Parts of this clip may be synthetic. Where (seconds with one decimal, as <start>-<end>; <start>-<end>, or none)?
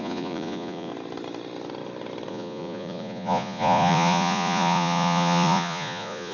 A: 0.0-0.9; 2.3-6.3